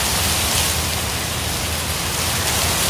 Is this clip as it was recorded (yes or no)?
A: yes